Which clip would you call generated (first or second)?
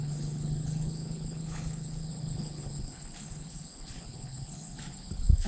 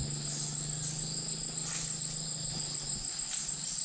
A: first